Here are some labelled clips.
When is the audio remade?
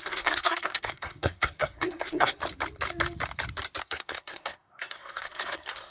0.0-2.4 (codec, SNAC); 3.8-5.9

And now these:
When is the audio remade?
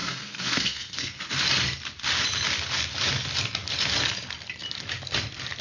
0.0-1.2 (codec, SNAC)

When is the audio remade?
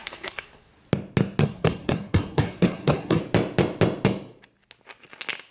0.0-0.7 (codec, SNAC); 1.4-3.2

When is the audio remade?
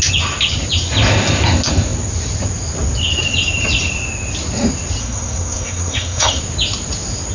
5.0-6.4 (codec, SNAC)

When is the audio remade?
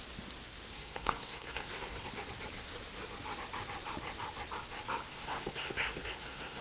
0.7-2.1 (codec, SNAC); 5.1-6.6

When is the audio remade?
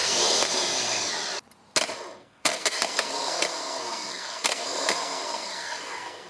0.0-1.1 (codec, SNAC); 2.2-6.3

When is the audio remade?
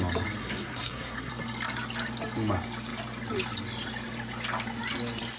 0.4-1.3 (codec, SNAC)